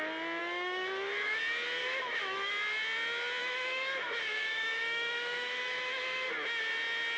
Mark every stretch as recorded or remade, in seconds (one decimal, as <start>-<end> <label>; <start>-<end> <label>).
0.0-0.4 recorded; 0.4-1.4 remade; 1.4-1.8 recorded; 1.8-2.5 remade; 2.5-3.4 recorded; 3.4-6.3 remade; 6.3-7.2 recorded